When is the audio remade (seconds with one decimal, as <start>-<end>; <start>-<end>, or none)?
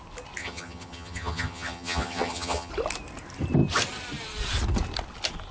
0.4-2.7